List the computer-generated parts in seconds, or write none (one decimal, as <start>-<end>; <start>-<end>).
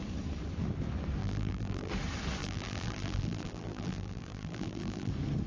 1.2-1.9; 2.4-5.1